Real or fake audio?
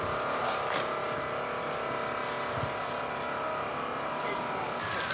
real